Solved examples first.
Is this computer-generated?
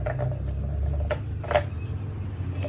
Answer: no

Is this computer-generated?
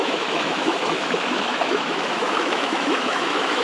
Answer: yes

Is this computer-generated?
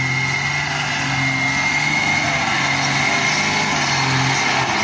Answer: no